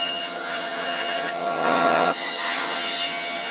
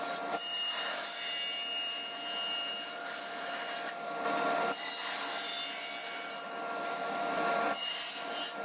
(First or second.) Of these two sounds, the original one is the second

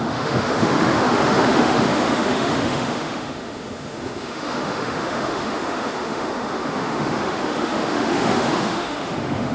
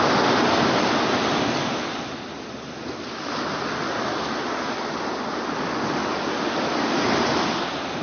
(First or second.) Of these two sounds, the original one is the second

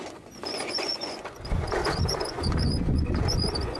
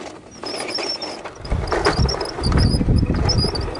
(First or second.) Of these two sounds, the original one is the second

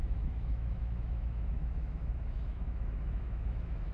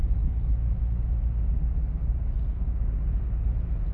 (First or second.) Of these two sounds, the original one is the second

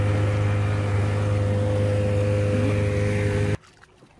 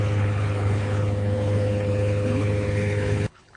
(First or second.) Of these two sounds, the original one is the first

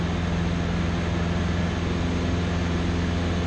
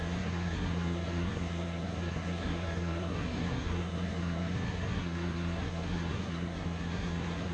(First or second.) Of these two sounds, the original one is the first